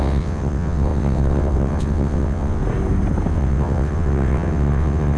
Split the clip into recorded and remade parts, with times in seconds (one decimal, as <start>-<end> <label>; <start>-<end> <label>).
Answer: 0.0-2.6 remade; 2.6-3.3 recorded; 3.3-5.2 remade